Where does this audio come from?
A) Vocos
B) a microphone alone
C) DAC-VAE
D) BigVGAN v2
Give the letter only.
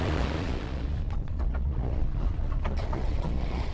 A